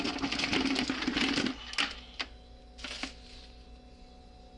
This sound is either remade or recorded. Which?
recorded